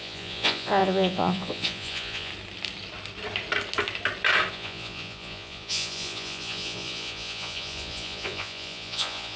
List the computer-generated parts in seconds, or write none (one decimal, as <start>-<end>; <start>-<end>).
0.0-2.3; 4.5-9.4